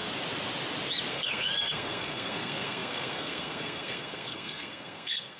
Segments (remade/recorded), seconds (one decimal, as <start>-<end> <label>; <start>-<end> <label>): 0.0-1.1 recorded; 1.1-5.4 remade